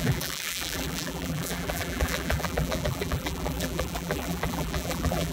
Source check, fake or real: fake